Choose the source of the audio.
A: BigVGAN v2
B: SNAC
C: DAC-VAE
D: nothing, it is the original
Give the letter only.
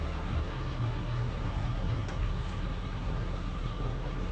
B